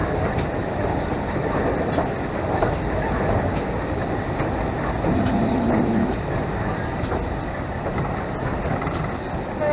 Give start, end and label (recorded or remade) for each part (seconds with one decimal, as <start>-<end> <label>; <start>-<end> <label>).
0.0-9.7 recorded